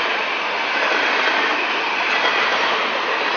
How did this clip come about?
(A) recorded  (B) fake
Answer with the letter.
A